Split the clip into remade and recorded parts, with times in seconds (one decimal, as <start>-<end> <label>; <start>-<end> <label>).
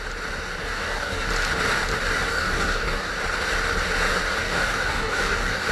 0.0-0.6 recorded; 0.6-1.3 remade; 1.3-2.3 recorded; 2.3-3.1 remade; 3.1-4.4 recorded; 4.4-5.7 remade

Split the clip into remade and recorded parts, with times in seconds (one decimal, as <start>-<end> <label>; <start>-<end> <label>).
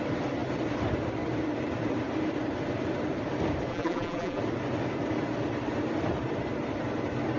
0.0-3.7 recorded; 3.7-4.4 remade; 4.4-7.4 recorded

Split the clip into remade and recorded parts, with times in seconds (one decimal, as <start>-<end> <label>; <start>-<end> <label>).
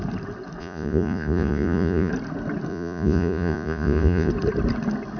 0.0-0.6 recorded; 0.6-2.1 remade; 2.1-2.7 recorded; 2.7-4.3 remade; 4.3-5.2 recorded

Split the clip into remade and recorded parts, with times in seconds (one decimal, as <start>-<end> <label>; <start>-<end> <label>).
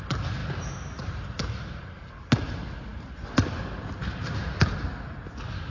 0.0-5.7 recorded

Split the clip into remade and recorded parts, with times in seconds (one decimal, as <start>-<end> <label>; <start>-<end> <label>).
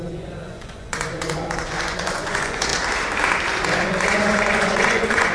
0.0-2.7 remade; 2.7-3.7 recorded; 3.7-5.3 remade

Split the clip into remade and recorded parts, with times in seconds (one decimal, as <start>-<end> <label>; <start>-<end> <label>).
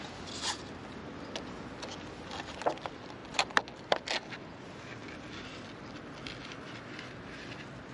0.0-7.9 recorded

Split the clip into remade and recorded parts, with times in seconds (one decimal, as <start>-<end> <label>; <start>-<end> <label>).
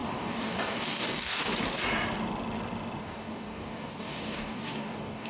0.0-1.4 remade; 1.4-3.0 recorded; 3.0-5.3 remade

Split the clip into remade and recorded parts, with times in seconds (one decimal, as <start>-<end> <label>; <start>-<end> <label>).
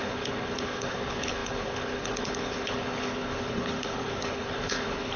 0.0-5.2 remade